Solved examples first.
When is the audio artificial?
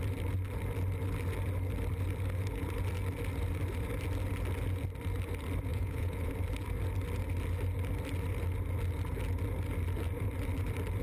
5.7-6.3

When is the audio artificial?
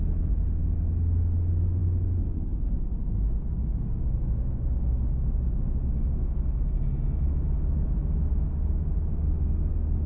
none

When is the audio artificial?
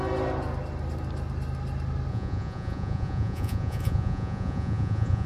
2.1-5.3